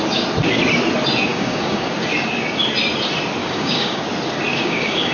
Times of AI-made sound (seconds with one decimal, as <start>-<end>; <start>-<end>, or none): 1.3-1.9; 3.4-4.0; 4.5-5.1